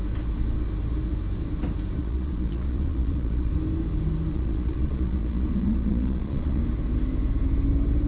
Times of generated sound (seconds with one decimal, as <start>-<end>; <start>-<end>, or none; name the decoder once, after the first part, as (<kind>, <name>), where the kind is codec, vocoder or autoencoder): 2.0-3.5 (vocoder, Vocos); 4.3-6.6